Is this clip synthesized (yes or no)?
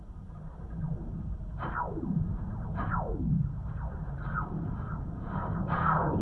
yes